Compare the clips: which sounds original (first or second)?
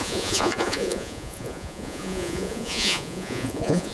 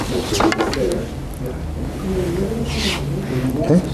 second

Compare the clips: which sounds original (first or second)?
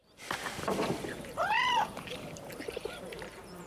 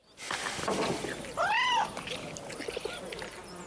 second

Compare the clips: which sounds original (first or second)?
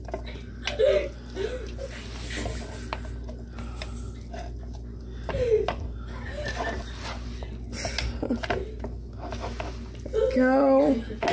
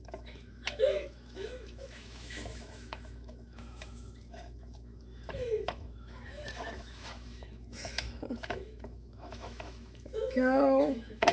first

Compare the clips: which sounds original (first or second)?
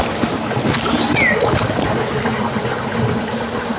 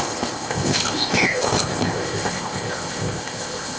first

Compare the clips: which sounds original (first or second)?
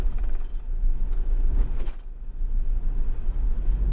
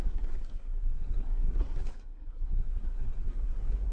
first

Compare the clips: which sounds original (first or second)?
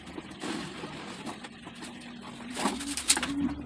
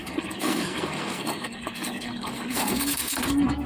first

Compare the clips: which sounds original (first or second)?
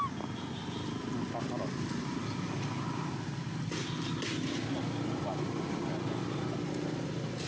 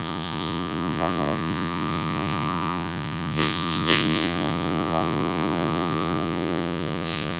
first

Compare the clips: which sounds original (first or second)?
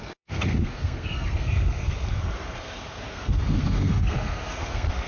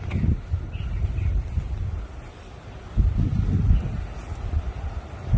second